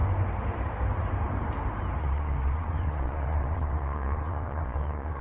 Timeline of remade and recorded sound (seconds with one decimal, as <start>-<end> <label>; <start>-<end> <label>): 0.0-2.0 recorded; 2.0-5.2 remade